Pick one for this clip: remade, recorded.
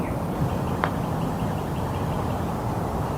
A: recorded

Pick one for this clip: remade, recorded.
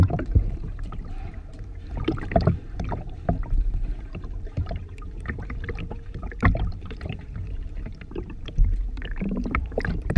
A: remade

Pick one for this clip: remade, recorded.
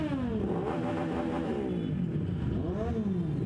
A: recorded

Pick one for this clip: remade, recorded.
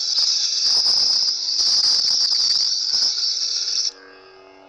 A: recorded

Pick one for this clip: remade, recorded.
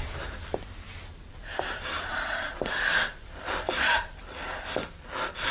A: remade